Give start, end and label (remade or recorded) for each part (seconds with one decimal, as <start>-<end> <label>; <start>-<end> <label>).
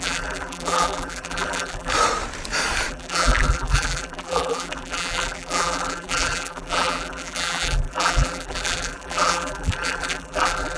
0.0-1.9 remade; 1.9-2.9 recorded; 2.9-10.8 remade